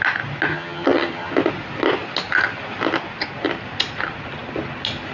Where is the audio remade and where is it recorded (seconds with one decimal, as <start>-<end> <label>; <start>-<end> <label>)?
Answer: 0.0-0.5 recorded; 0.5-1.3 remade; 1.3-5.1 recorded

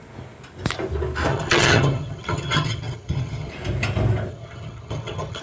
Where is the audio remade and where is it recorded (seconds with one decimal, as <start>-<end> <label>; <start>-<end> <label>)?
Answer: 0.0-1.3 recorded; 1.3-3.5 remade; 3.5-4.3 recorded; 4.3-5.4 remade

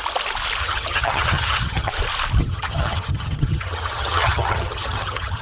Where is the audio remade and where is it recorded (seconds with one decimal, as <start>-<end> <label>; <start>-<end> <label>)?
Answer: 0.0-0.6 recorded; 0.6-1.9 remade; 1.9-2.4 recorded; 2.4-5.4 remade

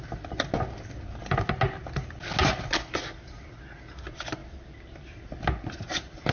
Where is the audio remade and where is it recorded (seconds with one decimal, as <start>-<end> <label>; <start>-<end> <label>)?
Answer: 0.0-6.3 recorded